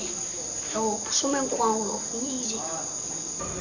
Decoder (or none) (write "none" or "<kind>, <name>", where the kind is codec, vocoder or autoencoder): none